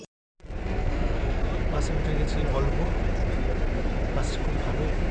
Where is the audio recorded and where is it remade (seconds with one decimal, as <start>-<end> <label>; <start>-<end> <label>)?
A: 0.0-0.6 recorded; 0.6-1.4 remade; 1.4-5.1 recorded